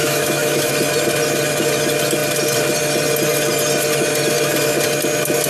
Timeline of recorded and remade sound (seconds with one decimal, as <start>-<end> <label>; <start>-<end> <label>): 0.0-0.7 remade; 0.7-5.5 recorded